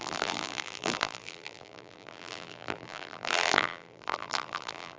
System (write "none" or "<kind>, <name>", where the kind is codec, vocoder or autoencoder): vocoder, BigVGAN v2